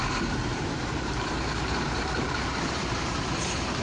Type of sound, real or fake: fake